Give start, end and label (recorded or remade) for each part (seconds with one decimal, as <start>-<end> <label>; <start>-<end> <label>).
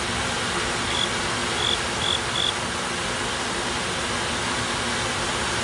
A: 0.0-5.6 recorded